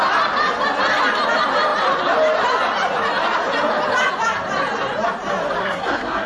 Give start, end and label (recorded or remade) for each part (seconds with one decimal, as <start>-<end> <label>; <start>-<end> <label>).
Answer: 0.0-5.6 recorded; 5.6-6.3 remade